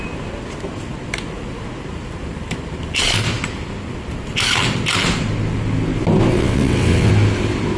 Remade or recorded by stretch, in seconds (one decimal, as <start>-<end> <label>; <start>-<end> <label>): 0.0-6.3 recorded; 6.3-7.1 remade; 7.1-7.8 recorded